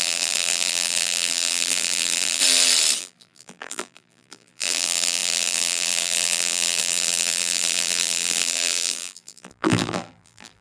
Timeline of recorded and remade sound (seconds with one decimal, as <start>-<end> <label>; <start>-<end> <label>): 0.0-2.4 remade; 2.4-3.0 recorded; 3.0-10.6 remade